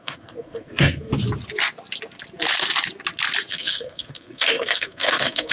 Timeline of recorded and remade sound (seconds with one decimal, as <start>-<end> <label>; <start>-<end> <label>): 0.0-1.1 remade; 1.1-3.5 recorded; 3.5-5.5 remade